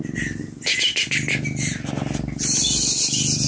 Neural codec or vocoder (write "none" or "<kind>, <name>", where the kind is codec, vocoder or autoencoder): none